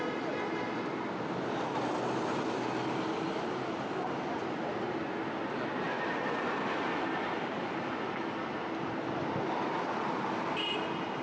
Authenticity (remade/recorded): recorded